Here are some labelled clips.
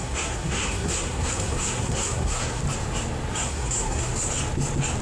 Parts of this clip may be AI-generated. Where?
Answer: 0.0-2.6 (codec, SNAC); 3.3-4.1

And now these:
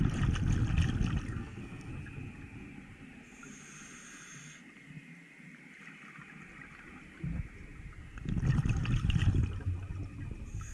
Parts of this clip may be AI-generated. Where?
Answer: 1.3-1.9 (codec, SNAC)

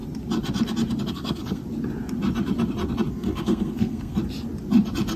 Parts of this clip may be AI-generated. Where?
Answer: 1.1-1.6 (codec, SNAC); 3.1-4.2

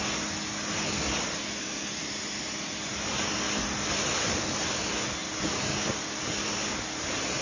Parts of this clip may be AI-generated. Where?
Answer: none

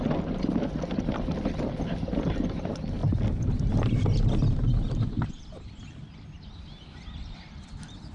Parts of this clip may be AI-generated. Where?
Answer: none